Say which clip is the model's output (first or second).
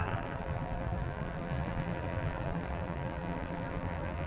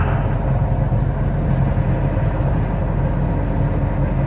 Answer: first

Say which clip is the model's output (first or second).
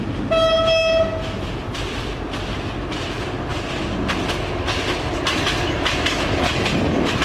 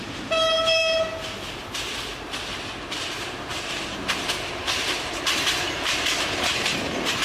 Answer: second